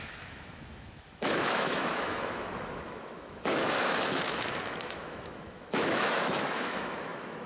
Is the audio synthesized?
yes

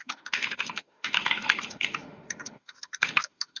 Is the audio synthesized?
yes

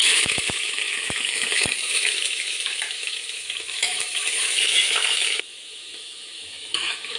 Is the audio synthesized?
yes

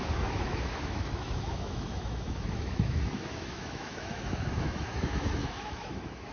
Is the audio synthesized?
yes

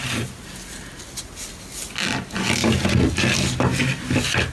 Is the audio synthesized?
no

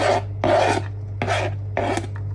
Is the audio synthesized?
no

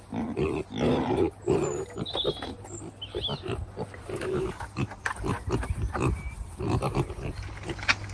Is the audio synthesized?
no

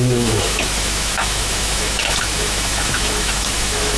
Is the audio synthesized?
yes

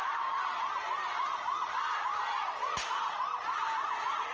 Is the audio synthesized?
no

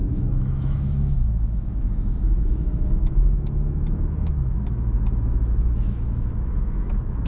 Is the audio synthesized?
yes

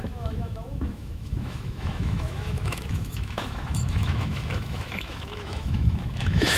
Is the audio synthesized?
yes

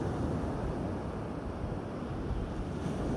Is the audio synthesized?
no